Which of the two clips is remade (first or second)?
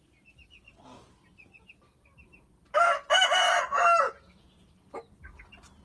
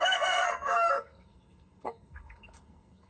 second